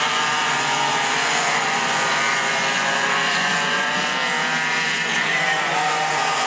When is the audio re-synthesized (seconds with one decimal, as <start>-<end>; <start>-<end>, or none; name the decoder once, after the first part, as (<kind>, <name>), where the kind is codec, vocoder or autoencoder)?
0.0-6.5 (vocoder, Vocos)

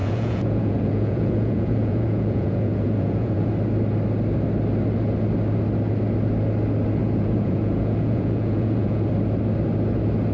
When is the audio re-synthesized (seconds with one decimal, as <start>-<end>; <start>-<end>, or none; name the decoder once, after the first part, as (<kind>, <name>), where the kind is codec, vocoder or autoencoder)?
0.0-3.5 (vocoder, Vocos); 7.0-9.1

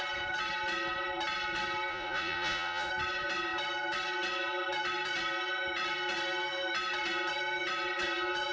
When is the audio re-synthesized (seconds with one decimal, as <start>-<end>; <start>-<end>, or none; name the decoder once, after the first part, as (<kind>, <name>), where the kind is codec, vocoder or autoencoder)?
1.9-2.9 (vocoder, Vocos)

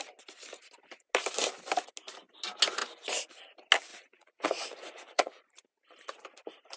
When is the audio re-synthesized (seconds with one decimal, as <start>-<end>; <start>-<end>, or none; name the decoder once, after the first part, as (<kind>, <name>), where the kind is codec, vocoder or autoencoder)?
3.9-5.4 (vocoder, Vocos)

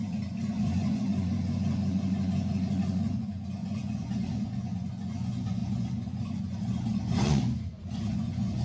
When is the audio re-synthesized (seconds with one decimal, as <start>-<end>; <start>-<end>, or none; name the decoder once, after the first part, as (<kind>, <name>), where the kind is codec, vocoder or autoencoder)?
0.0-8.6 (vocoder, Vocos)